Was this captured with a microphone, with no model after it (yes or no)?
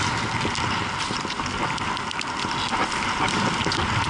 yes